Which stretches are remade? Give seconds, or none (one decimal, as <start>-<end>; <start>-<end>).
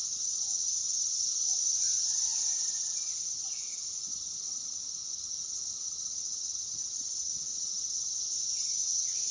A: 0.0-9.3